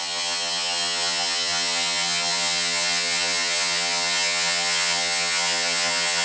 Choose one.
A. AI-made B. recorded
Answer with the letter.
A